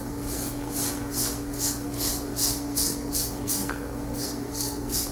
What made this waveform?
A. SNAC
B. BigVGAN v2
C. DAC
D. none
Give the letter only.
A